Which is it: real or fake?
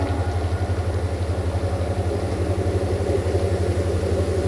real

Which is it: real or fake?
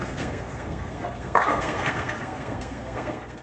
fake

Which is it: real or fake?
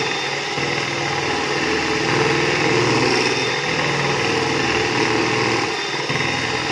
real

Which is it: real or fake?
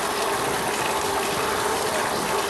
real